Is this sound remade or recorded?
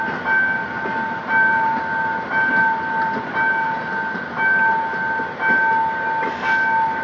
recorded